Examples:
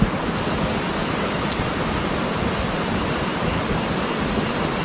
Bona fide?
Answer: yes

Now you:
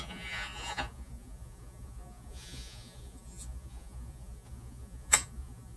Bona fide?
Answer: no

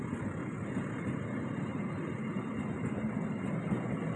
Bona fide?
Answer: yes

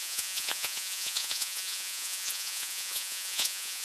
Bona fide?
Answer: no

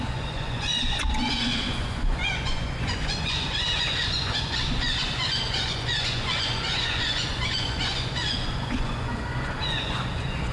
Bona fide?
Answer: no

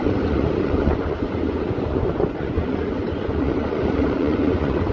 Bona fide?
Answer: no